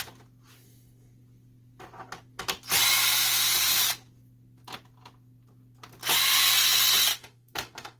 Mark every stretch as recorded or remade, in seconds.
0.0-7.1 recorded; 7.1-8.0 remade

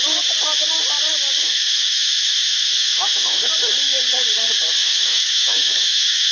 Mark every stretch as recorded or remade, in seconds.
0.0-1.4 recorded; 1.4-3.5 remade; 3.5-4.8 recorded; 4.8-6.3 remade

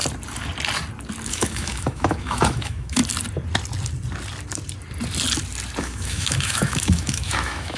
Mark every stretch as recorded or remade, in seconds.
0.0-1.3 recorded; 1.3-3.0 remade; 3.0-5.8 recorded; 5.8-7.8 remade

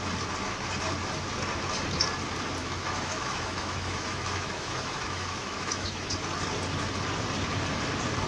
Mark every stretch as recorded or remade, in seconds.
0.0-2.6 recorded; 2.6-6.1 remade; 6.1-8.3 recorded